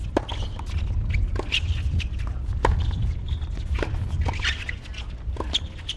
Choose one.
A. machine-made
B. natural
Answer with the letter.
B